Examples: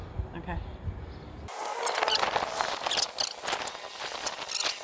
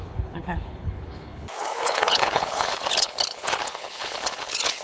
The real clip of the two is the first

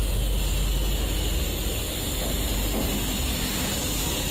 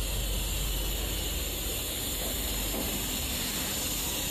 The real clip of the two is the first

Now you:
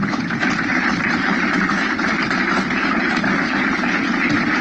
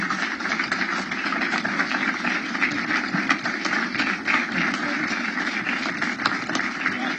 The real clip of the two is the second